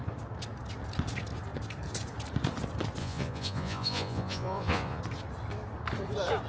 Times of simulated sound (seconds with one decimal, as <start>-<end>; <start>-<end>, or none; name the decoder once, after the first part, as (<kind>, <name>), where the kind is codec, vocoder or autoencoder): 3.0-5.0 (vocoder, Vocos)